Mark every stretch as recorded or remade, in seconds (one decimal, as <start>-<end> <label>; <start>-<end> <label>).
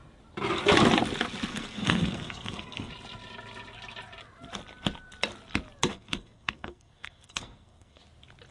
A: 0.0-1.5 recorded; 1.5-2.9 remade; 2.9-5.9 recorded; 5.9-8.0 remade; 8.0-8.5 recorded